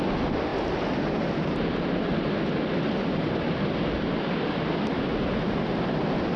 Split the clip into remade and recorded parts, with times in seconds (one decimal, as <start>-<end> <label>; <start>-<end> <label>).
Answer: 0.0-6.4 recorded